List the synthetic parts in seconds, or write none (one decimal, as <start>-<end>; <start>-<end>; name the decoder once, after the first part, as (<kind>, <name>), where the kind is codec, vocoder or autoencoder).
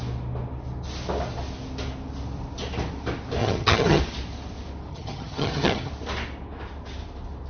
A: 3.4-4.0 (vocoder, HiFi-GAN); 4.9-5.9